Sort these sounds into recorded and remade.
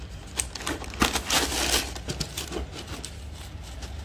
recorded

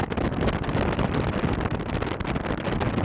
remade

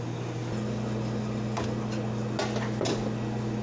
recorded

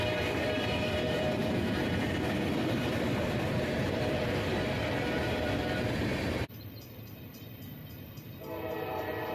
remade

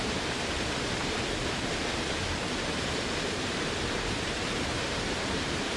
remade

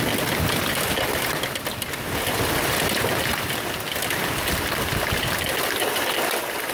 recorded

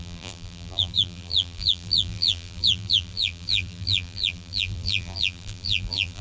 remade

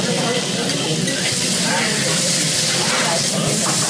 recorded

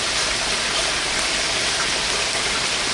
remade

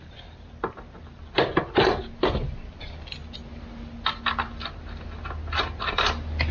recorded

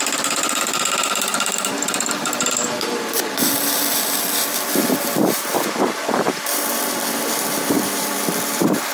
remade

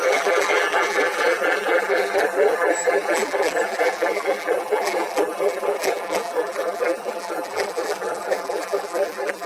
remade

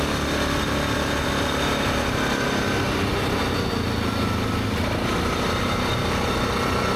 recorded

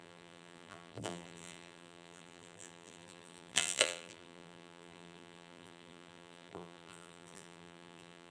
remade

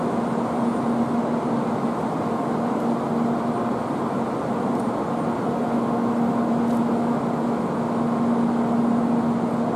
recorded